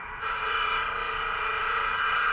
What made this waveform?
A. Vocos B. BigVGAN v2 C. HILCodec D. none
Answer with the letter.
B